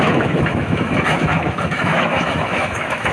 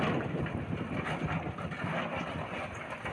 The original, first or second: second